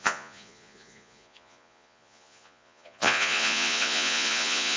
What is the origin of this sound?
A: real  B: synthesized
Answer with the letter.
B